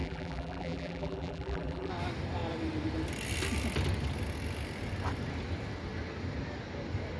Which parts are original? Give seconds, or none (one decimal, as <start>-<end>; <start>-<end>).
1.9-7.2